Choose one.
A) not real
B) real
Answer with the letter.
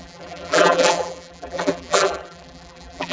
A